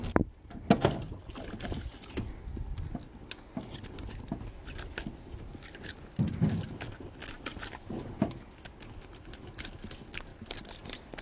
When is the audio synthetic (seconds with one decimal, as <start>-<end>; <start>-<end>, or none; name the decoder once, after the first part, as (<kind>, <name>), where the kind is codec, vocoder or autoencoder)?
none